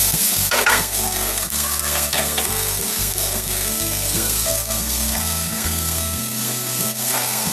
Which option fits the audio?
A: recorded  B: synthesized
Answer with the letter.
B